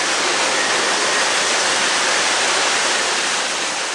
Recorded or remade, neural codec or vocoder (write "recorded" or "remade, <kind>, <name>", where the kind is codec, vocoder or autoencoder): recorded